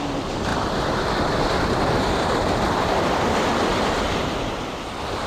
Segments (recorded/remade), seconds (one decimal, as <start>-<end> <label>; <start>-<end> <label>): 0.0-3.7 remade; 3.7-4.2 recorded; 4.2-5.3 remade